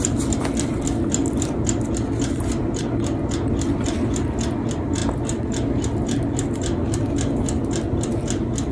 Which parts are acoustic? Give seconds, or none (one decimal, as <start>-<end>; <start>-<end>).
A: 0.0-8.7